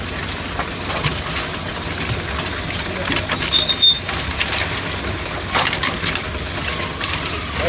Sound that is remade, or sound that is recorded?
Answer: recorded